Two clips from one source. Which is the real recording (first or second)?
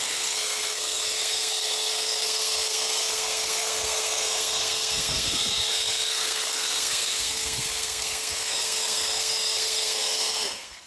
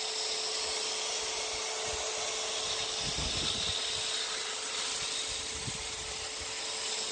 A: second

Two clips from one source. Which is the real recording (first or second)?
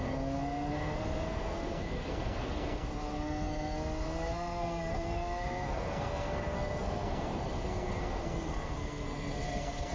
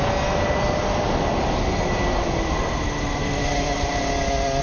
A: second